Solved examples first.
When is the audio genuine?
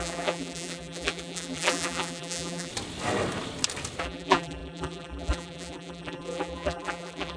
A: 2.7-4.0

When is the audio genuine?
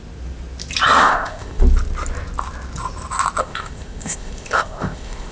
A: 0.0-1.0; 1.6-3.4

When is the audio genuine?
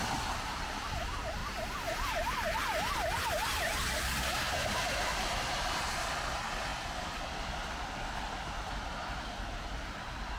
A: 0.0-10.4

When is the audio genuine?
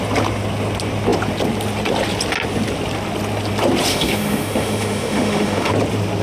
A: 0.0-3.9; 5.7-6.2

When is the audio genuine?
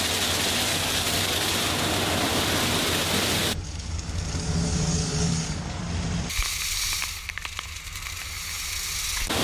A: 0.0-0.7; 1.5-3.4; 5.8-9.4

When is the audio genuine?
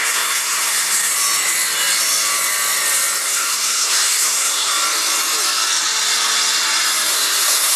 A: 1.1-3.2; 4.7-7.1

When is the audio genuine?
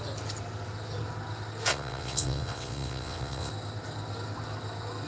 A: 0.0-1.7; 3.5-5.1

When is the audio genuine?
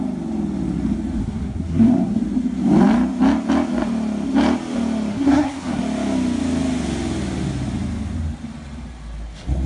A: 0.0-1.2; 2.2-5.1; 5.8-9.7